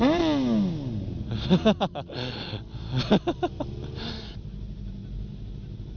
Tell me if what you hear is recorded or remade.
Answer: recorded